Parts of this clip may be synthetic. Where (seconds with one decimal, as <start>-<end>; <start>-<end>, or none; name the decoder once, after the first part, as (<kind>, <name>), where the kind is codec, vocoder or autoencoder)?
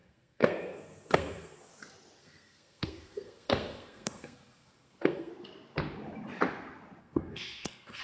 0.0-1.7 (codec, SNAC); 2.2-5.3; 7.0-8.0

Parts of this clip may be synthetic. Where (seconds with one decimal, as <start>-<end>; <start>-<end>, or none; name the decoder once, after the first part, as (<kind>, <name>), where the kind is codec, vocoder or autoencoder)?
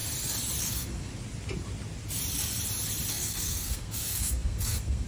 0.6-1.1 (codec, SNAC); 3.1-5.1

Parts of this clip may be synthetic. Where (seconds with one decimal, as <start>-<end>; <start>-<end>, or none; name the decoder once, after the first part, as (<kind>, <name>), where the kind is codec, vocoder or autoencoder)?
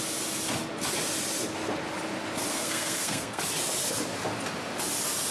2.5-3.4 (codec, SNAC)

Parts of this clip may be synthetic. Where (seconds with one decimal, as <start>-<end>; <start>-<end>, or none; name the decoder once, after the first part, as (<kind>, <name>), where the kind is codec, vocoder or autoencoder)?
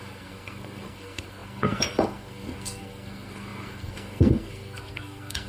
0.0-5.5 (codec, SNAC)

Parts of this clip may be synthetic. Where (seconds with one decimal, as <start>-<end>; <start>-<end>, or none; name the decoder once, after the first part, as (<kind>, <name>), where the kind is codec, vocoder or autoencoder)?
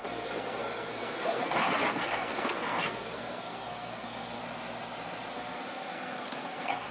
0.0-4.4 (codec, SNAC); 5.3-6.9